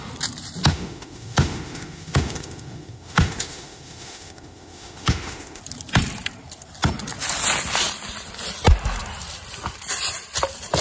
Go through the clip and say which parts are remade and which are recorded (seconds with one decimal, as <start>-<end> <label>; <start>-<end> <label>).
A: 0.0-0.7 recorded; 0.7-5.6 remade; 5.6-10.8 recorded